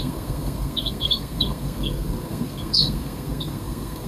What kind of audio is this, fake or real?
fake